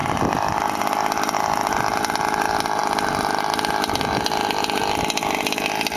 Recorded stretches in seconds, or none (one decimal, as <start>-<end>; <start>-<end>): 0.8-6.0